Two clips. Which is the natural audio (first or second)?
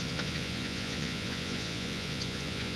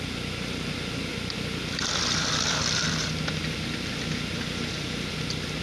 second